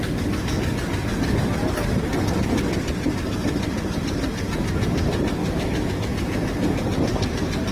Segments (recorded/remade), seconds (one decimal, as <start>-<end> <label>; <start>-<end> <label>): 0.0-5.4 recorded; 5.4-5.9 remade; 5.9-7.7 recorded